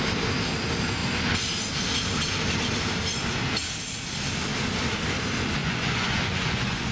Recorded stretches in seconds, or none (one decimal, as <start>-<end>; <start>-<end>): 0.0-5.6